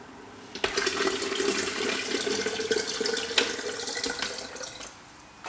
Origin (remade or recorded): recorded